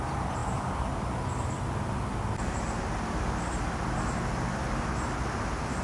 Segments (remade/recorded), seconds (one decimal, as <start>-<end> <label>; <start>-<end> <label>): 0.0-5.8 recorded